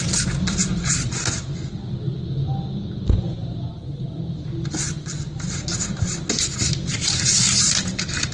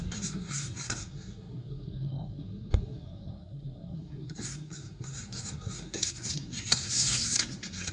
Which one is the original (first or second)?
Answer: first